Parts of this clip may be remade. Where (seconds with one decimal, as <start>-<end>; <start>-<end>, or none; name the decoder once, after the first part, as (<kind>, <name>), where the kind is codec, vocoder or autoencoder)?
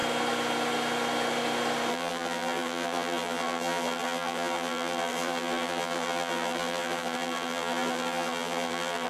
1.9-9.1 (vocoder, BigVGAN v2)